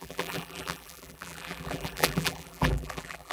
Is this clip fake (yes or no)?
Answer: yes